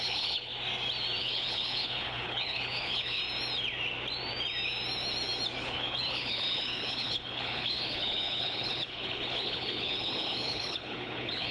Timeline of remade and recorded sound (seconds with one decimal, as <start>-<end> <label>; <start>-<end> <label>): 0.0-0.5 remade; 0.5-1.2 recorded; 1.2-3.2 remade; 3.2-5.6 recorded; 5.6-11.5 remade